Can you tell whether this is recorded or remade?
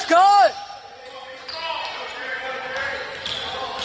recorded